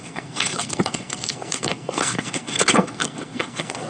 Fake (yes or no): yes